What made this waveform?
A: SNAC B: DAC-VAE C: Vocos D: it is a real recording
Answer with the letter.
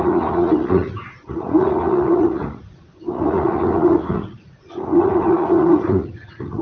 C